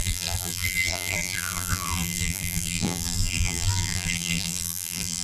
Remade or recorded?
remade